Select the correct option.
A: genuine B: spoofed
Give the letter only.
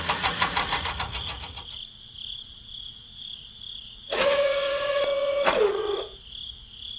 B